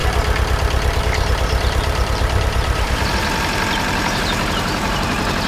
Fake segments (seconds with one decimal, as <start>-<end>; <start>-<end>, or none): 1.0-5.5